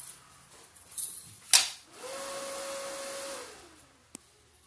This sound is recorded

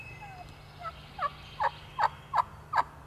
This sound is recorded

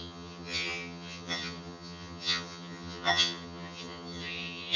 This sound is remade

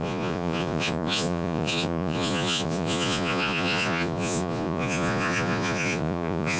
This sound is remade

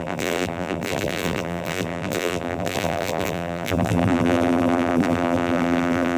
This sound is remade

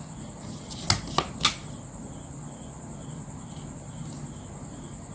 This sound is recorded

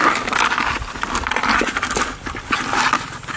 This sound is recorded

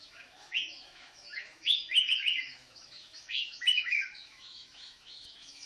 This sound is remade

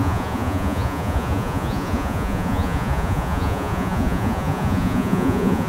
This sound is remade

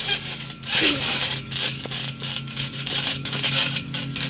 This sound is remade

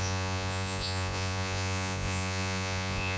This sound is remade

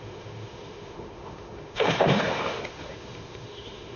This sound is remade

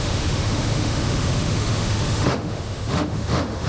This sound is remade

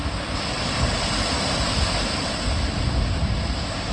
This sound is recorded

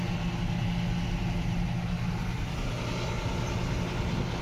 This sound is recorded